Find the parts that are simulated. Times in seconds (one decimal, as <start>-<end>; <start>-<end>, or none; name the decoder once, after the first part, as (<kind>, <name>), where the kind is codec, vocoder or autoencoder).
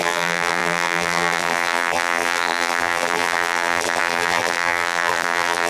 0.0-5.7 (vocoder, BigVGAN v2)